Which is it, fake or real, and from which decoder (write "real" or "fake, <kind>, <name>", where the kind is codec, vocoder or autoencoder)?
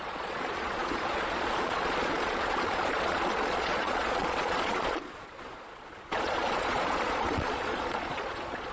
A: fake, vocoder, Vocos